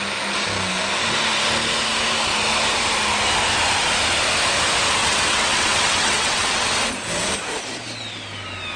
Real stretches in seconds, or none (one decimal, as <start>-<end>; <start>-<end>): 0.0-5.0; 6.7-8.8